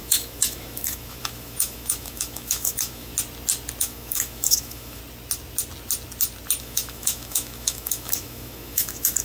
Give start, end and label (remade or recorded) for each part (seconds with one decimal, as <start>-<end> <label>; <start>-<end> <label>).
0.0-3.1 remade; 3.1-3.8 recorded; 3.8-5.0 remade; 5.0-6.6 recorded; 6.6-9.2 remade